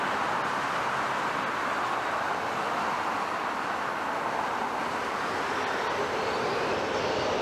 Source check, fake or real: real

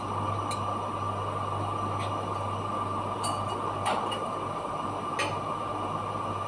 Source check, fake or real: real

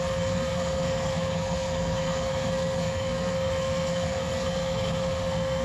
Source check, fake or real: fake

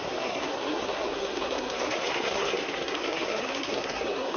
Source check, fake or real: fake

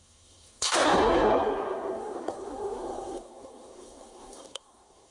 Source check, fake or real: fake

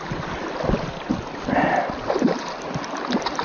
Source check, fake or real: real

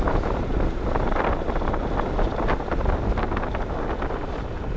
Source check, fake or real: real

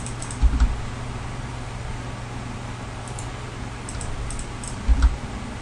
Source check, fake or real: real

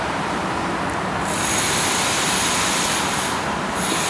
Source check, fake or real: real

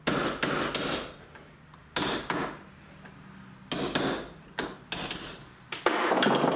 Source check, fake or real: real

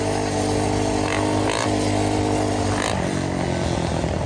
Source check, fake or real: real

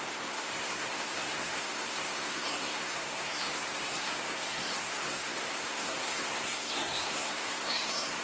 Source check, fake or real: fake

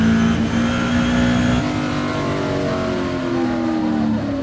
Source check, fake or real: real